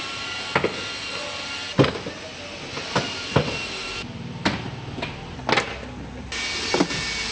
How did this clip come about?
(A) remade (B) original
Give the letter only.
B